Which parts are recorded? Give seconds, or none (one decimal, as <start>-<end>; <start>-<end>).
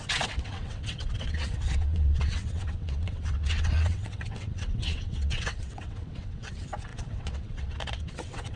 none